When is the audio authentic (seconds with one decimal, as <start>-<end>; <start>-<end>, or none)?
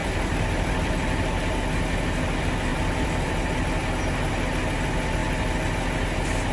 0.9-2.7; 3.8-6.5